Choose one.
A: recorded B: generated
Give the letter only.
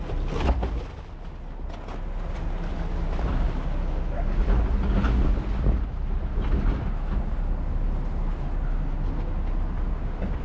A